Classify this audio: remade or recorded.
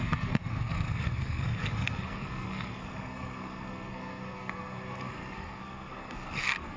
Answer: remade